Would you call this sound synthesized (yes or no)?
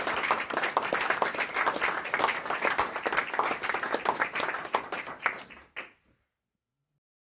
no